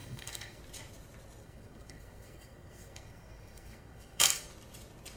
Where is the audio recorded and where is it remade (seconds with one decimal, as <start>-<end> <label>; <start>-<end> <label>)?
0.0-0.6 remade; 0.6-1.4 recorded; 1.4-4.5 remade; 4.5-5.2 recorded